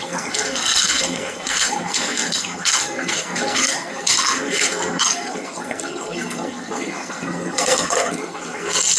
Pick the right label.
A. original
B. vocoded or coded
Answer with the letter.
B